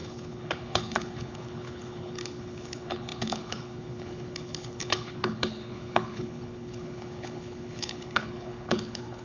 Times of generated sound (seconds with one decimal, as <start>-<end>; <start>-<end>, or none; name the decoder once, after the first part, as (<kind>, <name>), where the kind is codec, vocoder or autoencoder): 0.0-9.2 (codec, HILCodec)